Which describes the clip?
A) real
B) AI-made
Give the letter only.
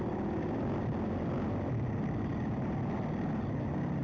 A